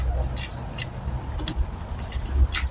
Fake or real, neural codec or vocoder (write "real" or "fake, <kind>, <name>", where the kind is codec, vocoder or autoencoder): real